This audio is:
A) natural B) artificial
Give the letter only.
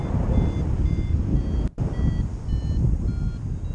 A